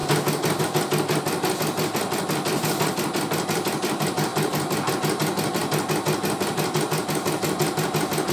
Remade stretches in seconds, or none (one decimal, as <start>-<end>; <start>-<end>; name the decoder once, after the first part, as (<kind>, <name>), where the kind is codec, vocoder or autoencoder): none